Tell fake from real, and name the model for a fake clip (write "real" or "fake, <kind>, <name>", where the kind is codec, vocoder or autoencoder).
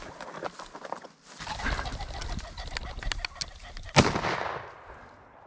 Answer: real